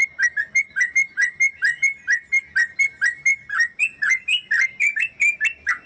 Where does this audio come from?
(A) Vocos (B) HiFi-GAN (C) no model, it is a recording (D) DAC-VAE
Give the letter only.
C